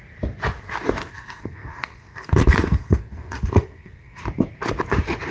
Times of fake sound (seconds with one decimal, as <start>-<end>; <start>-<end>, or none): 1.0-4.2